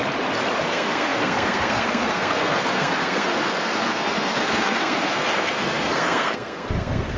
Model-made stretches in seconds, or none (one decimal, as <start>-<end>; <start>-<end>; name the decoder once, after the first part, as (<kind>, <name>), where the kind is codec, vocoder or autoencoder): 0.7-7.2 (codec, SNAC)